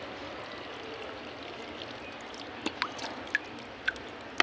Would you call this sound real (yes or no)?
yes